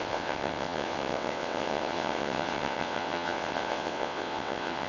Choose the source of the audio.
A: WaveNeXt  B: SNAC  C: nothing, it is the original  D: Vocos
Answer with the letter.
A